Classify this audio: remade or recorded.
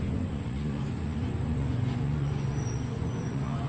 remade